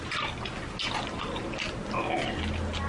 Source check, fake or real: real